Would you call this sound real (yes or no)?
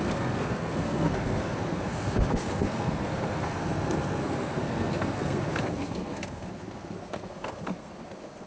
no